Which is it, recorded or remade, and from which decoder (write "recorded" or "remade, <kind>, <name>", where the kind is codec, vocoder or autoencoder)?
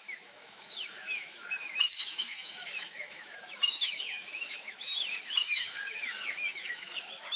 remade, autoencoder, DAC-VAE